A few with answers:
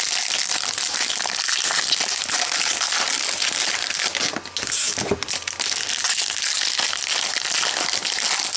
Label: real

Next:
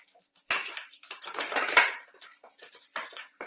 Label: fake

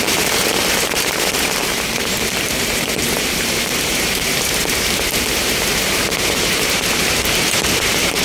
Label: fake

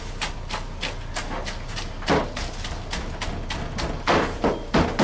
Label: real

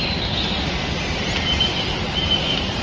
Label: real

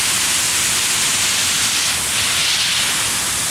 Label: real